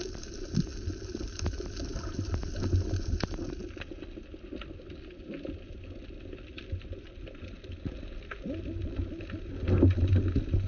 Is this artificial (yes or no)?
no